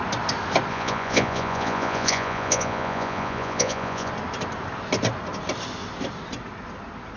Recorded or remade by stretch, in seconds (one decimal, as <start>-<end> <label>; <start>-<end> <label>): 0.0-0.7 recorded; 0.7-4.1 remade; 4.1-7.2 recorded